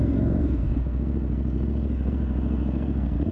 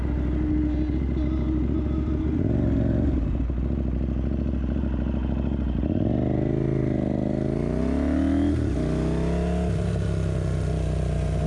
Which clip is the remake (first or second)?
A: first